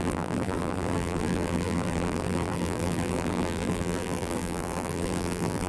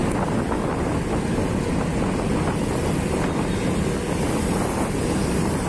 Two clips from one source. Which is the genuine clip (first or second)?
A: second